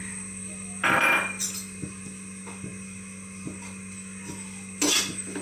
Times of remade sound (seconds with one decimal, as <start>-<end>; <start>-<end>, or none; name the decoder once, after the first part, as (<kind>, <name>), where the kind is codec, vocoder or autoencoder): none